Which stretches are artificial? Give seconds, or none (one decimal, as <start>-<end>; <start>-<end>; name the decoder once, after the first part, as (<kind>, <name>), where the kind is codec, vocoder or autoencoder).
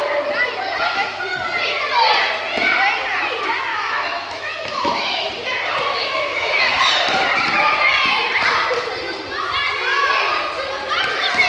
3.7-5.3 (autoencoder, DAC-VAE); 5.9-6.8